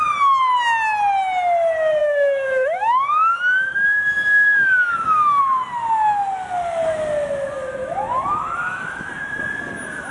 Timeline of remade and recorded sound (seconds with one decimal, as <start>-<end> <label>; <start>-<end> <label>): 0.0-2.0 recorded; 2.0-5.4 remade; 5.4-7.8 recorded; 7.8-9.1 remade; 9.1-10.1 recorded